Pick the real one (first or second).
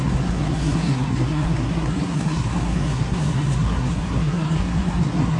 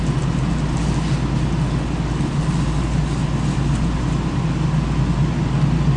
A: second